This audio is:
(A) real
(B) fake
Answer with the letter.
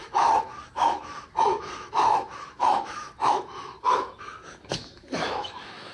B